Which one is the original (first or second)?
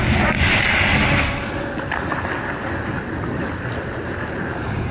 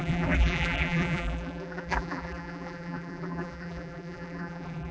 first